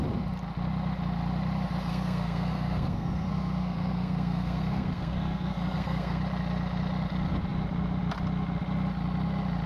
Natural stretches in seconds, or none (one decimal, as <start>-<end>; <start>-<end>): 0.0-1.9; 6.2-9.7